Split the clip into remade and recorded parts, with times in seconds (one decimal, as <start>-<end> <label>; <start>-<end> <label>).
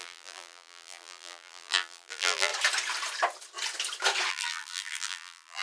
0.0-2.5 remade; 2.5-4.3 recorded; 4.3-5.6 remade